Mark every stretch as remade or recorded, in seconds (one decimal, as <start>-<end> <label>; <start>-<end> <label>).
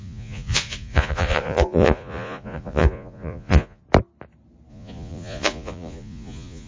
0.0-3.8 remade; 3.8-4.7 recorded; 4.7-6.7 remade